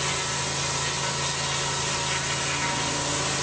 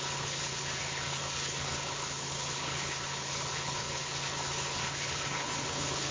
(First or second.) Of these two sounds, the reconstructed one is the second